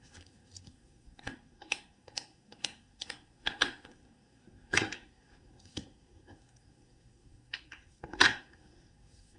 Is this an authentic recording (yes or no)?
no